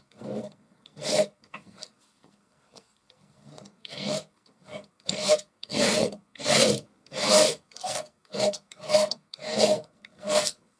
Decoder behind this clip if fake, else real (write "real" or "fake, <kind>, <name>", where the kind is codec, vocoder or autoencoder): fake, codec, SNAC